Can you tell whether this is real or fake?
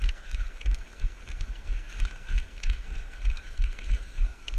fake